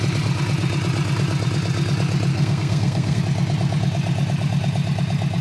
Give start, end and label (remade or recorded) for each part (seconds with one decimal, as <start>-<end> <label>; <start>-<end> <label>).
0.0-2.3 recorded; 2.3-3.2 remade; 3.2-5.4 recorded